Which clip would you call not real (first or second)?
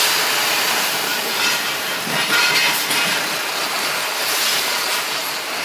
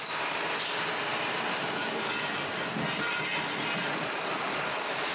first